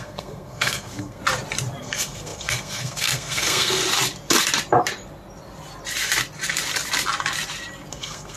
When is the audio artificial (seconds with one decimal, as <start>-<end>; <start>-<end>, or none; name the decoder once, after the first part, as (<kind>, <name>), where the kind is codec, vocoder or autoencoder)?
0.0-1.2 (codec, SNAC); 1.8-3.8; 7.9-8.4